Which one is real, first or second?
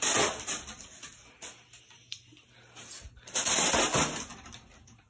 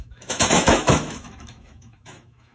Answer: first